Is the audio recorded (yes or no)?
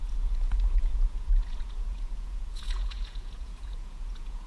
no